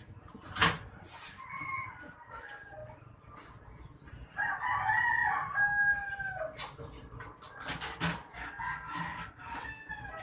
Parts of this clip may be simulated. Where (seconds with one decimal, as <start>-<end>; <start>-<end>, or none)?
none